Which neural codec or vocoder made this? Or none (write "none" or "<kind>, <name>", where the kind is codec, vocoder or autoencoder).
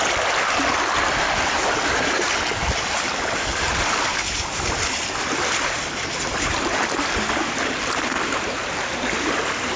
none